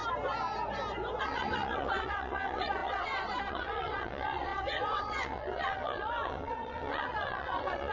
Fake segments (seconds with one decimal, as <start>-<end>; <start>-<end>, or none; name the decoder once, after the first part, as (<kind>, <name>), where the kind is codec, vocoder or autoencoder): 1.2-7.9 (vocoder, WaveNeXt)